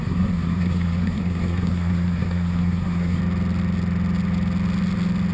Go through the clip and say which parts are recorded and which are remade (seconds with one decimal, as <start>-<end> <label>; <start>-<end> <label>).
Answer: 0.0-3.2 remade; 3.2-5.3 recorded